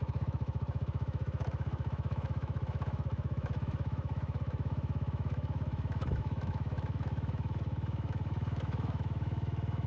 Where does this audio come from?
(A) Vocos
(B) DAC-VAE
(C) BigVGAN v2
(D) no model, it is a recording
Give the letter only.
B